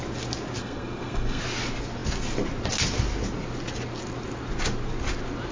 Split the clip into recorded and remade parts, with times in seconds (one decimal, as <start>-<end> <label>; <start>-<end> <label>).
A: 0.0-0.6 recorded; 0.6-1.4 remade; 1.4-5.5 recorded